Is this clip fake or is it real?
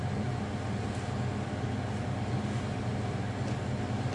real